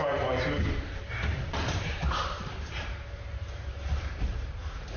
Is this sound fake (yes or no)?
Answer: yes